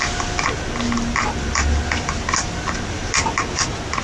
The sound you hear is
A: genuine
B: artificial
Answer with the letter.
A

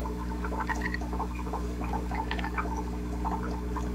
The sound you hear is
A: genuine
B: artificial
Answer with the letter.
B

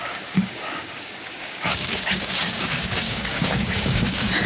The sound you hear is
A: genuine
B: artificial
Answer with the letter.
B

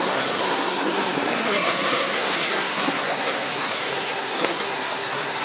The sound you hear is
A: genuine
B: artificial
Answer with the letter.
B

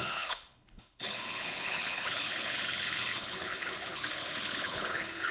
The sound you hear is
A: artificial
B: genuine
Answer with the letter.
A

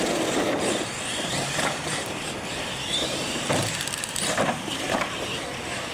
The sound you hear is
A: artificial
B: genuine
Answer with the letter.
B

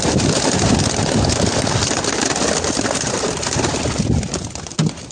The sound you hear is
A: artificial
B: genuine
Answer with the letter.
B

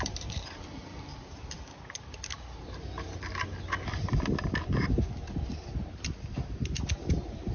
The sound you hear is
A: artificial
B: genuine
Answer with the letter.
B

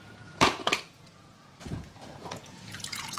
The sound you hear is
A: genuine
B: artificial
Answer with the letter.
B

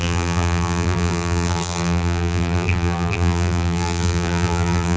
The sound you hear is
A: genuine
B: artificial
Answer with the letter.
B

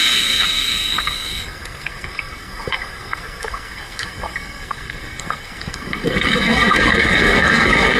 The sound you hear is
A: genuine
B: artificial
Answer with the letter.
B